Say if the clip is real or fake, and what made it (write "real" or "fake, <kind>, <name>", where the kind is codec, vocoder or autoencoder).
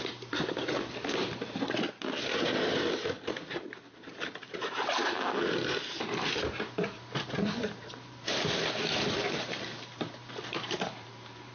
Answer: fake, vocoder, BigVGAN v2